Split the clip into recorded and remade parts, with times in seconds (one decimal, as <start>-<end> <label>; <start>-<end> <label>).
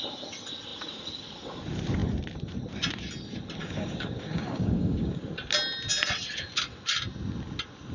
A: 0.0-3.6 recorded; 3.6-5.2 remade; 5.2-7.9 recorded